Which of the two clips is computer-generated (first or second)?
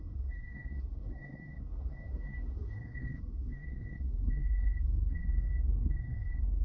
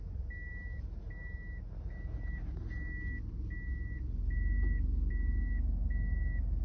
first